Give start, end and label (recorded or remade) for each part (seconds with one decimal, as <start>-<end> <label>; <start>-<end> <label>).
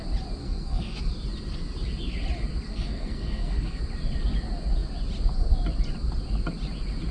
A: 0.0-0.4 recorded; 0.4-1.0 remade; 1.0-2.7 recorded; 2.7-3.8 remade; 3.8-7.1 recorded